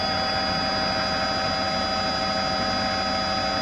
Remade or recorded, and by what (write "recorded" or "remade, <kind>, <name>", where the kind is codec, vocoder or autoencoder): recorded